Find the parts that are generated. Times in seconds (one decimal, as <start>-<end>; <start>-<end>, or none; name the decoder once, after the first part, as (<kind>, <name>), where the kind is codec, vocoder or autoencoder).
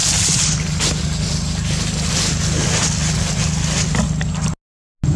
0.0-3.1 (vocoder, BigVGAN v2)